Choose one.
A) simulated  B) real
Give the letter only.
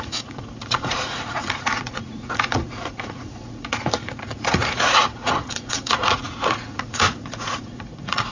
A